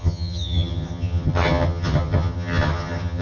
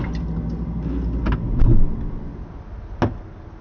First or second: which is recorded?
second